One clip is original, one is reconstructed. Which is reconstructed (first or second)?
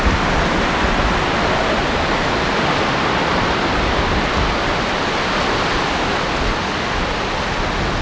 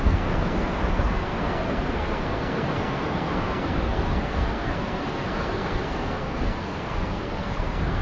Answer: second